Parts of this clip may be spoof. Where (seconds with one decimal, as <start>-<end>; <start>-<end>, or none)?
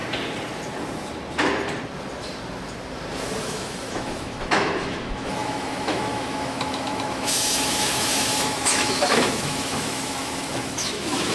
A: 3.4-11.3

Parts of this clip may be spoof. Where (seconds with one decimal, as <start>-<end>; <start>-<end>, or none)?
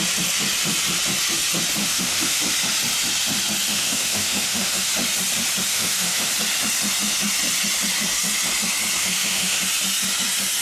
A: 1.8-2.4; 3.7-4.9; 5.7-6.3; 9.0-9.6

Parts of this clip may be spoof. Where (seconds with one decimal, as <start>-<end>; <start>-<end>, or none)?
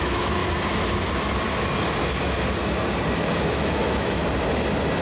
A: 0.0-0.4; 3.4-4.2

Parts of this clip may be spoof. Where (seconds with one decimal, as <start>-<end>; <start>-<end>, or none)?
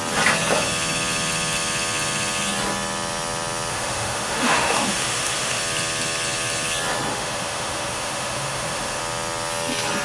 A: 3.7-5.6; 7.1-9.0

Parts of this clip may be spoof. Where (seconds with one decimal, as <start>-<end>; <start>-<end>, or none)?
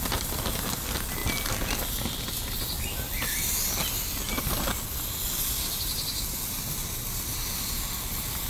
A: none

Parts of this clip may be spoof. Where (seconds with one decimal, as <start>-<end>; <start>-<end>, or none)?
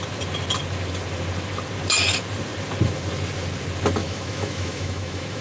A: 4.0-5.4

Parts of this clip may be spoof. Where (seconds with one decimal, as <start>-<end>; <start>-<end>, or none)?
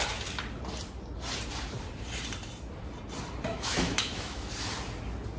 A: 3.5-4.5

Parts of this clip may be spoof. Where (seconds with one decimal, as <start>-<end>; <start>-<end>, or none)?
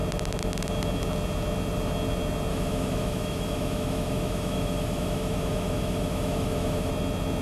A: 2.5-6.9